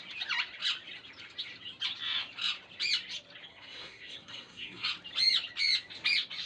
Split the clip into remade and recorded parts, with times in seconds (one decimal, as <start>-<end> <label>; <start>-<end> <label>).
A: 0.0-3.5 recorded; 3.5-4.9 remade; 4.9-6.5 recorded